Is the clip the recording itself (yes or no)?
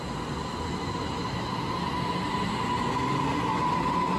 yes